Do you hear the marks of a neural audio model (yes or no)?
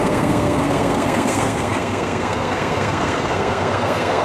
yes